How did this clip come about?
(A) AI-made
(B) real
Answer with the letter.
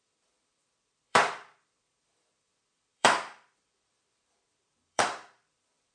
A